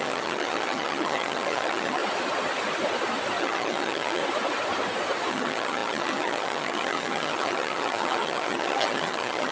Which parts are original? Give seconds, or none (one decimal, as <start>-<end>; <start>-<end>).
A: 2.0-3.4; 4.2-5.3